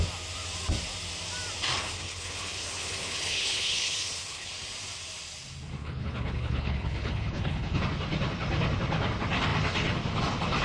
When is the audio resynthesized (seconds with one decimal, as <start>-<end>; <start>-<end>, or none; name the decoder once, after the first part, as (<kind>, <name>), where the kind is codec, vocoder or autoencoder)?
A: 1.8-4.5 (codec, HILCodec); 5.8-7.8